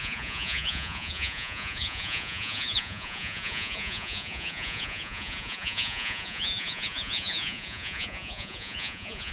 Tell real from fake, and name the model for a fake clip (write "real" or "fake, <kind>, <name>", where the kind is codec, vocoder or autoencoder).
fake, vocoder, Vocos